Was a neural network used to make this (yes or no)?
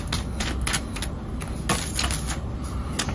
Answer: no